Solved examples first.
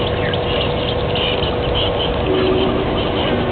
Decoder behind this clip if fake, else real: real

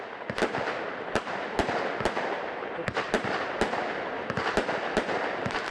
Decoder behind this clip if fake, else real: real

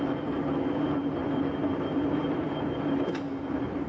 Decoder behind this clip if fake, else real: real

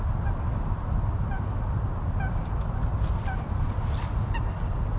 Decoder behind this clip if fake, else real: real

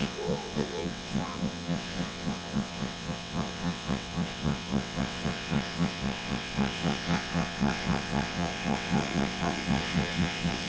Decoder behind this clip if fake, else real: fake, vocoder, WaveNeXt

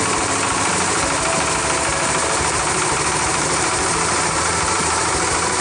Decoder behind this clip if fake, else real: fake, vocoder, BigVGAN v2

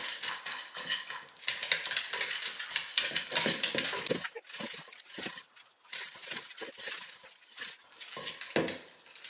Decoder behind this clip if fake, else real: real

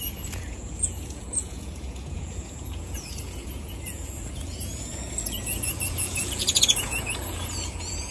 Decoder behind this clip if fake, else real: fake, vocoder, Vocos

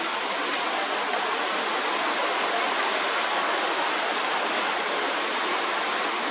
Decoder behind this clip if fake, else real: real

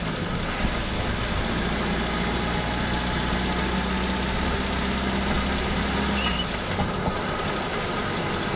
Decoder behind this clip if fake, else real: real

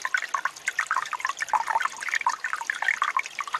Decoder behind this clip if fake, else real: real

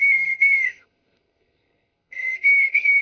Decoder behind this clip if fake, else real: fake, codec, SNAC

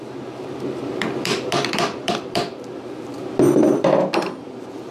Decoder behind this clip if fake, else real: fake, vocoder, BigVGAN v2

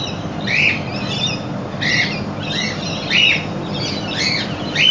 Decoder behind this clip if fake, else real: fake, vocoder, BigVGAN v2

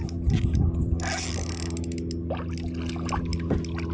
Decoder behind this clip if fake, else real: real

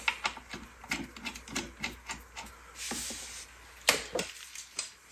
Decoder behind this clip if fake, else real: real